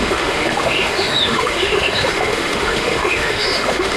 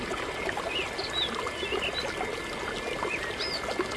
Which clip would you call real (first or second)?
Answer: second